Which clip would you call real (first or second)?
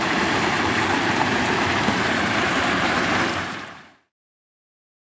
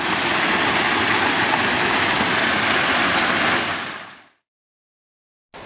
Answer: second